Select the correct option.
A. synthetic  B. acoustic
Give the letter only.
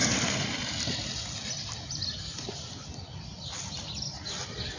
B